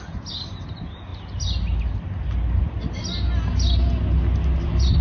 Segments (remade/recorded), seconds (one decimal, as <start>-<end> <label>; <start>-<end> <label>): 0.0-5.0 recorded